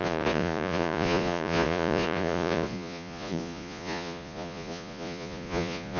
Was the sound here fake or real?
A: fake